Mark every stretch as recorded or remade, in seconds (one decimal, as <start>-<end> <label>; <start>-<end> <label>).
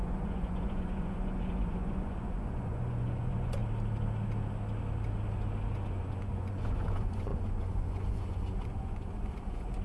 0.0-3.6 remade; 3.6-5.7 recorded; 5.7-9.8 remade